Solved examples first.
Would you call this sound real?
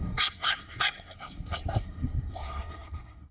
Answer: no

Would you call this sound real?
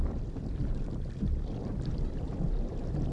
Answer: no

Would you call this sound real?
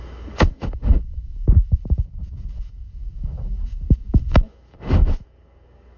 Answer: no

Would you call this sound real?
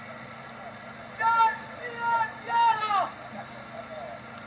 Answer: yes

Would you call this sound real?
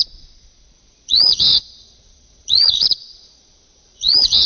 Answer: no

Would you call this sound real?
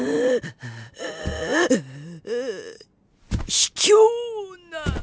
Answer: yes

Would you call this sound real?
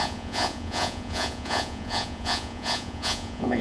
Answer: no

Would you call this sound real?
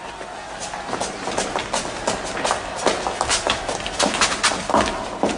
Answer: yes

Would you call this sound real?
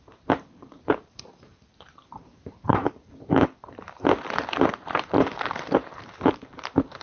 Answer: no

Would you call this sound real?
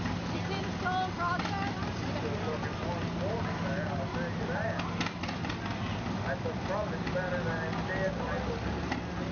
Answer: yes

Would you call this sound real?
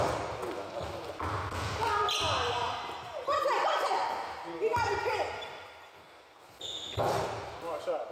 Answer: yes